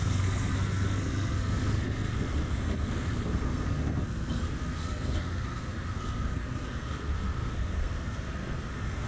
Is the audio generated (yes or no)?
yes